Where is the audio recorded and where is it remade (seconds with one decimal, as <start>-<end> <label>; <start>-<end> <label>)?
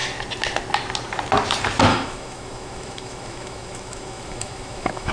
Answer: 0.0-1.9 recorded; 1.9-5.1 remade